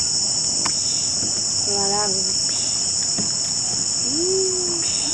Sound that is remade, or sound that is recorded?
recorded